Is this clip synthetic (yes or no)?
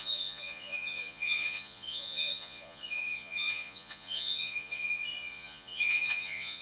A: yes